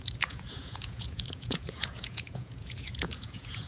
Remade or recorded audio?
remade